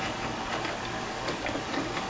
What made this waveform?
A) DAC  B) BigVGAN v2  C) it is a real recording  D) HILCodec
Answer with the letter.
A